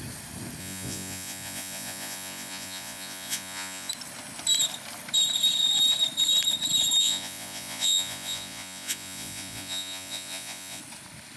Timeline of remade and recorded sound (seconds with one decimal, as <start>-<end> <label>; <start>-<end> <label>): 0.0-0.6 recorded; 0.6-3.9 remade; 3.9-7.0 recorded; 7.0-10.8 remade; 10.8-11.4 recorded